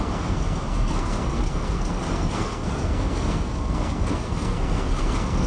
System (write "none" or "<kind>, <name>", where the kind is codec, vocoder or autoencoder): codec, SNAC